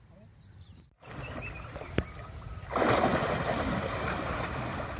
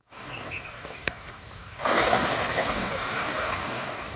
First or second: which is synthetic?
second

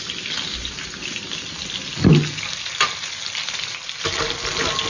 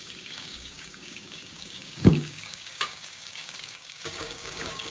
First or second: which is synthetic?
second